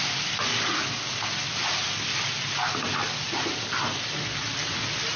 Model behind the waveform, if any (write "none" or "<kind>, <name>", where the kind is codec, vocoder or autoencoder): none